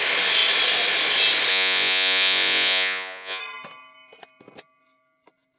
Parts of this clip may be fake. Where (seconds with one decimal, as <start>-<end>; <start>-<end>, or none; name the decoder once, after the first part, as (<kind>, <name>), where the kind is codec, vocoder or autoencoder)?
1.5-3.4 (vocoder, Vocos)